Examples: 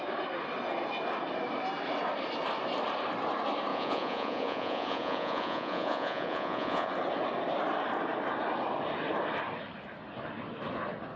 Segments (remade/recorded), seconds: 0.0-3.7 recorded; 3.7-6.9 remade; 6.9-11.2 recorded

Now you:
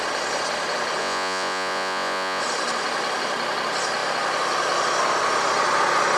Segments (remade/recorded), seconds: 0.0-1.0 recorded; 1.0-2.4 remade; 2.4-6.2 recorded

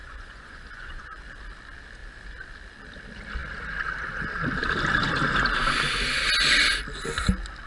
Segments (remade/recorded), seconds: 0.0-1.2 remade; 1.2-7.7 recorded